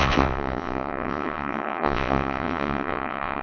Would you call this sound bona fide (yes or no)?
no